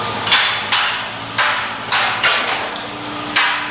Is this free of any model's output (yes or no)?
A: yes